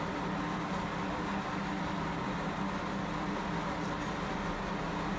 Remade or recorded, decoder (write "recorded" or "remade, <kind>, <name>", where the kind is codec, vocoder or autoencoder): recorded